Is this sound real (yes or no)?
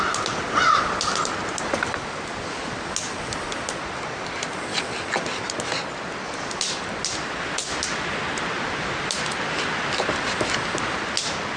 yes